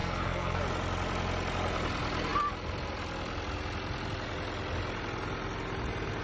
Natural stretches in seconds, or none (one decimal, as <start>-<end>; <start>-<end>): 0.6-6.2